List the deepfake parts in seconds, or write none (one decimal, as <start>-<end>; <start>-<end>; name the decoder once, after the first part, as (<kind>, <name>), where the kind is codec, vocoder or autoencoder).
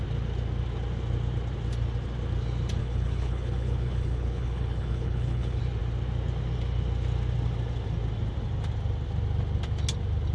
2.8-5.6 (codec, HILCodec)